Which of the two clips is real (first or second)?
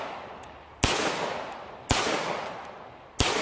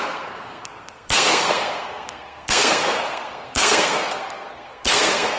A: first